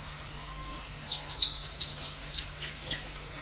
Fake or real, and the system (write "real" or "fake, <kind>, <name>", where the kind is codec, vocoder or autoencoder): fake, codec, SNAC